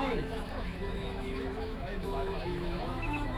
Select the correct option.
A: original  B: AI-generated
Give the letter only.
B